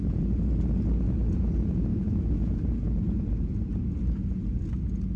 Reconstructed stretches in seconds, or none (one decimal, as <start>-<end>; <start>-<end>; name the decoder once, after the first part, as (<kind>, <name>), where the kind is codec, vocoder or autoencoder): 1.9-2.6 (autoencoder, DAC-VAE)